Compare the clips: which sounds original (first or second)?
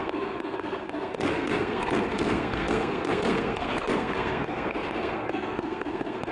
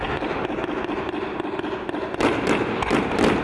second